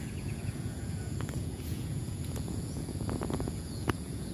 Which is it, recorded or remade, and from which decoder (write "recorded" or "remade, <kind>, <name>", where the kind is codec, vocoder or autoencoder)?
remade, vocoder, Vocos